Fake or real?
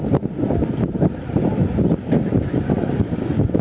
real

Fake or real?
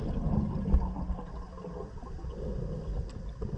real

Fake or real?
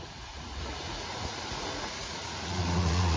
fake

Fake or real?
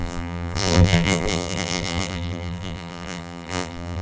fake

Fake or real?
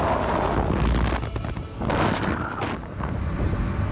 real